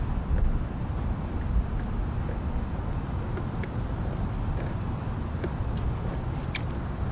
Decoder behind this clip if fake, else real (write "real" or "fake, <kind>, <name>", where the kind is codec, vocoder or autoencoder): real